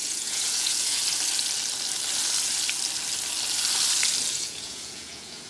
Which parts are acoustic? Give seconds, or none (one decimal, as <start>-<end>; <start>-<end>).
1.0-4.3

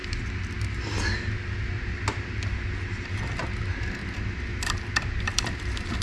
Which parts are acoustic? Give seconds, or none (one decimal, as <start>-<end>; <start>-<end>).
0.0-3.6; 4.0-5.0